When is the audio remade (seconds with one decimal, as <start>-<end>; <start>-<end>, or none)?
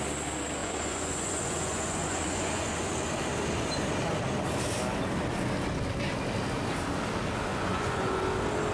0.6-2.9; 7.5-8.2